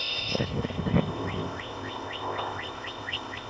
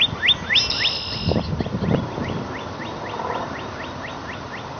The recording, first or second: second